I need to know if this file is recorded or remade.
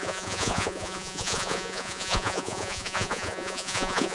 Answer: remade